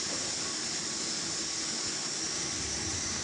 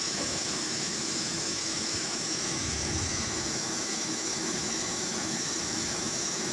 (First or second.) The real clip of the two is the first